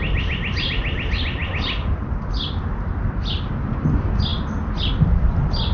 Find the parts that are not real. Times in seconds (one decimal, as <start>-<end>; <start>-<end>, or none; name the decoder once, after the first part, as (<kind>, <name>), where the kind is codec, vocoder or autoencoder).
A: none